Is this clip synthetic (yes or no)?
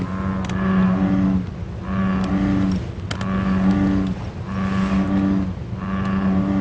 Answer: no